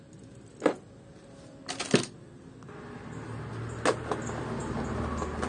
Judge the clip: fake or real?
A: real